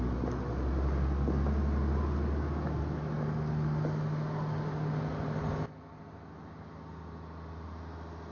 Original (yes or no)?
yes